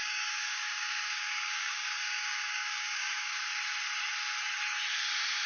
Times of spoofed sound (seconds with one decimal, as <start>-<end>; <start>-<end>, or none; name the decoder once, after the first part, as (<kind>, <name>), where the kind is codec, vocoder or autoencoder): 0.0-3.3 (codec, DAC)